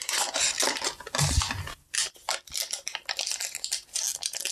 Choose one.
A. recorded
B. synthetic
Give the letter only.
A